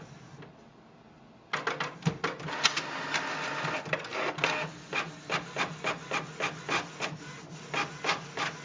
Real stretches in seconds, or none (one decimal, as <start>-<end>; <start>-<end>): 0.0-8.6